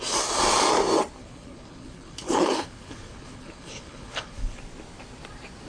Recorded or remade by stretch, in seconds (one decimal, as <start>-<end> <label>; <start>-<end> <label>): 0.0-1.2 recorded; 1.2-4.6 remade; 4.6-5.7 recorded